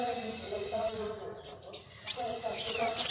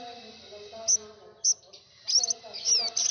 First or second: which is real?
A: second